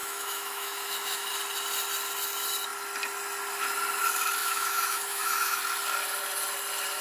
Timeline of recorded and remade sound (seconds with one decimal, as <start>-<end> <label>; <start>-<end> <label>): 0.0-1.3 remade; 1.3-4.4 recorded; 4.4-5.6 remade; 5.6-7.0 recorded